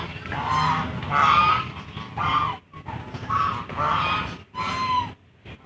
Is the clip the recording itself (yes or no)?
yes